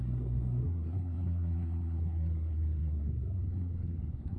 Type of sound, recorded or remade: remade